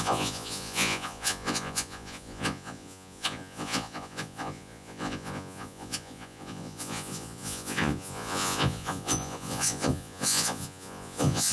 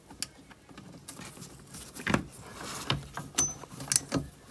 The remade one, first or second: first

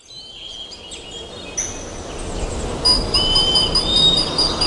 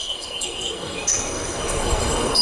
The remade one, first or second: second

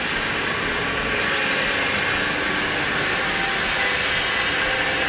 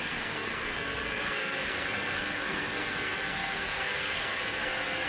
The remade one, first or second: second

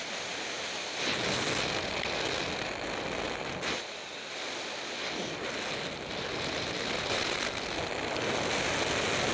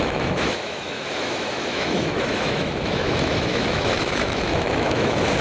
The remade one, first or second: second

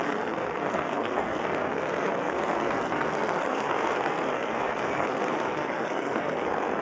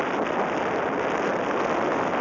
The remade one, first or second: first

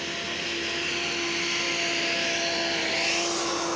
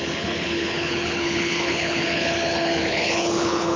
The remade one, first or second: second